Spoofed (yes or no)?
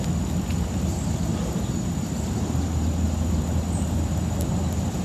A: no